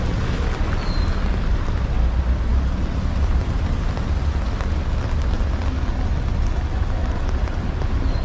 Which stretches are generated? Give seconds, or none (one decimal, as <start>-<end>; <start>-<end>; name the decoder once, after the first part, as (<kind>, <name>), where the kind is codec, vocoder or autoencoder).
none